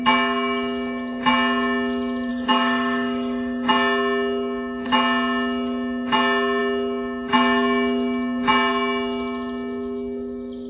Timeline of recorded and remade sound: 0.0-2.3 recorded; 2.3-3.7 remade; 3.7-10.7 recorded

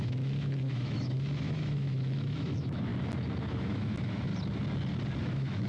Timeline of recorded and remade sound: 0.0-2.9 remade; 2.9-3.5 recorded; 3.5-4.3 remade; 4.3-5.2 recorded; 5.2-5.7 remade

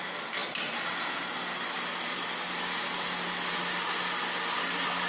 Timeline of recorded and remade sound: 0.0-5.1 recorded